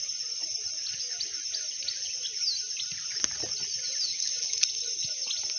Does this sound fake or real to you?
real